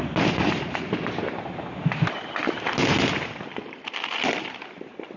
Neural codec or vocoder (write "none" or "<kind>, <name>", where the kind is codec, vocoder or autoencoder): none